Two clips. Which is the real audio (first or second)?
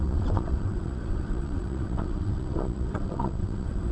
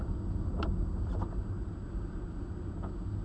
second